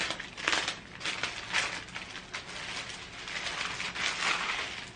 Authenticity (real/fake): real